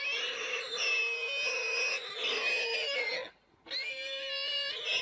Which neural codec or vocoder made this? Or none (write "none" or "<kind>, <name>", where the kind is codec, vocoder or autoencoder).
none